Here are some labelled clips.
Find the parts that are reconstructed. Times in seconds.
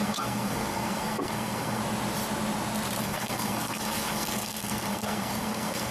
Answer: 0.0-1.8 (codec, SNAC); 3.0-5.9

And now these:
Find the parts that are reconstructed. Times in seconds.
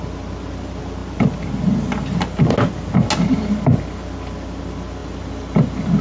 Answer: 5.0-6.0 (vocoder, BigVGAN v2)